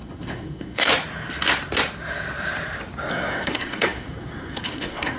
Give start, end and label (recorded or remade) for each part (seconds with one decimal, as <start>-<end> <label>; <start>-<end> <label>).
0.0-0.9 remade; 0.9-3.1 recorded; 3.1-5.2 remade